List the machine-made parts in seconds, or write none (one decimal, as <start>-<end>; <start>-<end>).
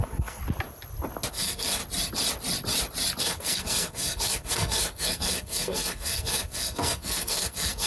0.0-0.4; 1.3-1.8; 3.2-7.9